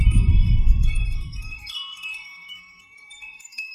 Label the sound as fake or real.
fake